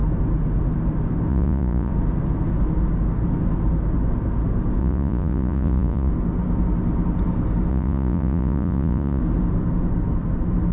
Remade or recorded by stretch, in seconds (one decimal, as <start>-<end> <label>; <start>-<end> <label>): 0.0-1.3 recorded; 1.3-1.9 remade; 1.9-4.8 recorded; 4.8-6.1 remade; 6.1-7.7 recorded; 7.7-9.2 remade; 9.2-10.7 recorded